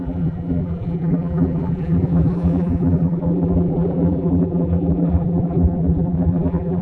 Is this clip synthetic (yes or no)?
yes